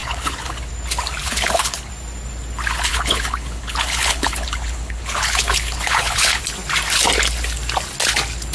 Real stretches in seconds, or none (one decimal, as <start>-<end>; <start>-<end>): 0.7-1.2; 1.9-2.9; 6.4-8.5

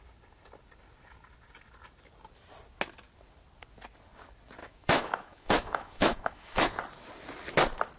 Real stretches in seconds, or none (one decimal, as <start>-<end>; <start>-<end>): 0.0-4.6; 6.8-8.0